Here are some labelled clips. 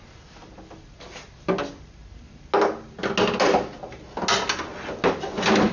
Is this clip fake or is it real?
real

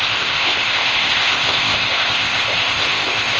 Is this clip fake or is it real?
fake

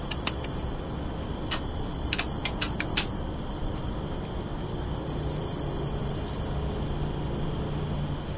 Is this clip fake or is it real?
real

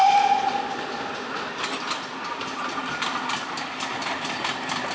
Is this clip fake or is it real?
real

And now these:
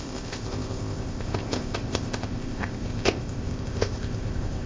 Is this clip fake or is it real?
fake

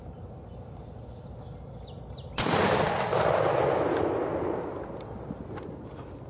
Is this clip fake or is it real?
real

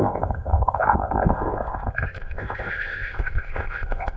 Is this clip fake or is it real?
fake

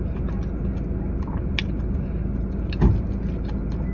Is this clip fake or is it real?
real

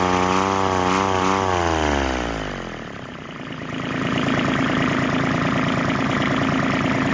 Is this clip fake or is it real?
real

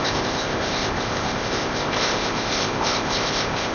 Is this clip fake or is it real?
fake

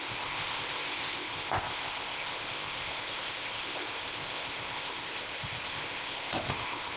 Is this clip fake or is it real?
fake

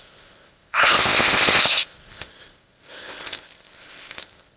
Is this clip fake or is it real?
fake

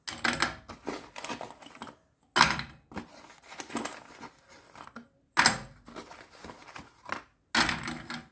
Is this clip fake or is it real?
real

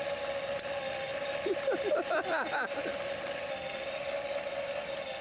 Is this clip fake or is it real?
real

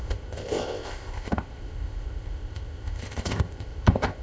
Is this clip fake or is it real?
fake